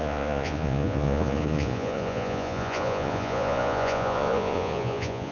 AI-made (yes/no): yes